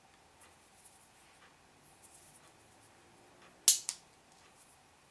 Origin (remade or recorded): recorded